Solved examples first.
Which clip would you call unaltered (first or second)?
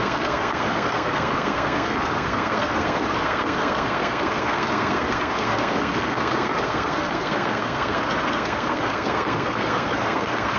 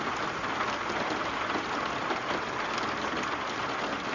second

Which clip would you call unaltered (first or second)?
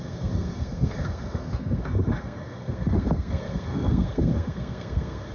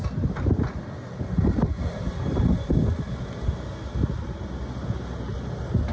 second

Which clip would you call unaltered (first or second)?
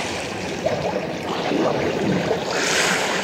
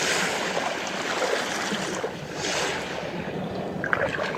second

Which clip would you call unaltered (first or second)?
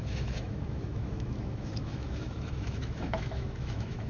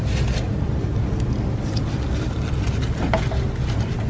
second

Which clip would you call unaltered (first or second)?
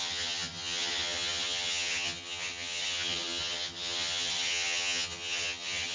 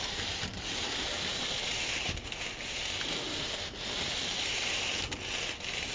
second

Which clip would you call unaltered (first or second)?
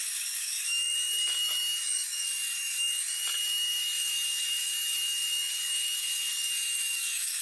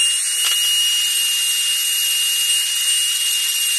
second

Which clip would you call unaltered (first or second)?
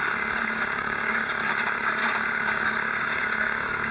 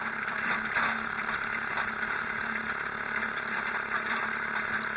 second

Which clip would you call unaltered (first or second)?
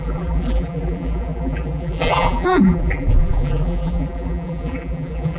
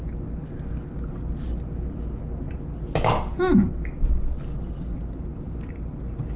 second